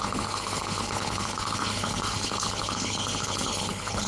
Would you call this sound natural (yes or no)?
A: no